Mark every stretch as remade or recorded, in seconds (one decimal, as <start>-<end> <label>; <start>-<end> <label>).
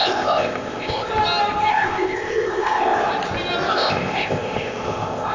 0.0-1.1 remade; 1.1-1.7 recorded; 1.7-3.0 remade; 3.0-3.7 recorded; 3.7-5.3 remade